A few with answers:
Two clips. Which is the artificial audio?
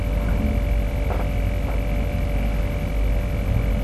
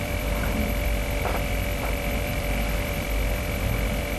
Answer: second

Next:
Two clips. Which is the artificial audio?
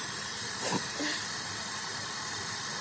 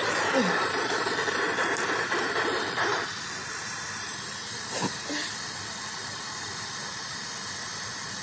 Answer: first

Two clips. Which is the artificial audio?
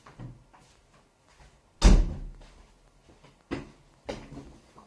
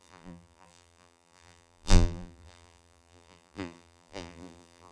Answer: second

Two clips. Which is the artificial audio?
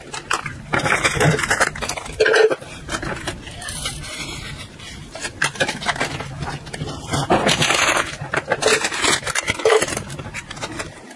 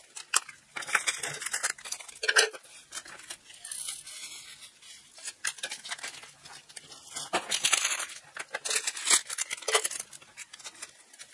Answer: first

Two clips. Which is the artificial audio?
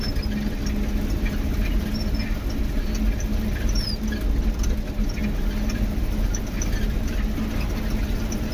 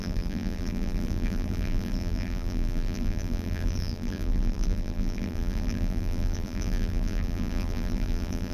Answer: second